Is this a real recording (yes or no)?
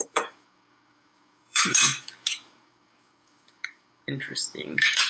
no